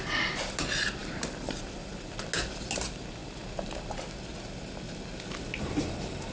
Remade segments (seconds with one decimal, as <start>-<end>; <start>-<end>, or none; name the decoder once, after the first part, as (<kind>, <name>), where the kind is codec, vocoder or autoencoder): none